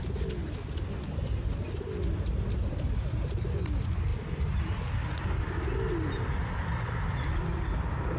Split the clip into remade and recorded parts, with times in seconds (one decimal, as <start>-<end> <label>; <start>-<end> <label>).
0.0-4.1 recorded; 4.1-4.6 remade; 4.6-8.2 recorded